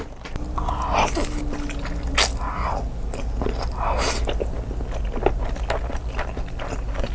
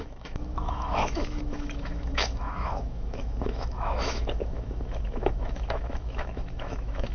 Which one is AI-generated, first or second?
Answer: second